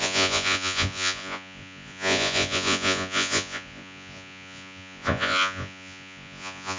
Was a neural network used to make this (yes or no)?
yes